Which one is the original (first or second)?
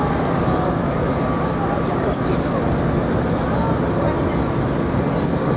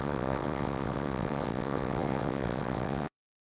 first